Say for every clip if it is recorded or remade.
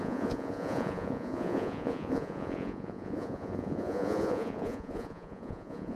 remade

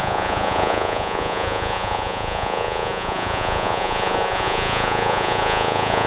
remade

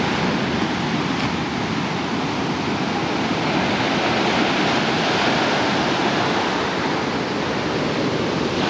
recorded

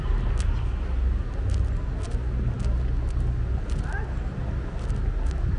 recorded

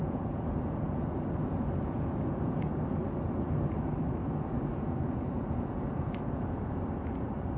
remade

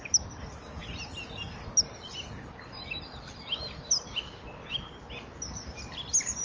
recorded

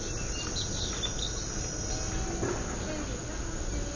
recorded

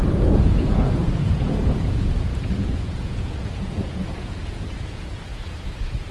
remade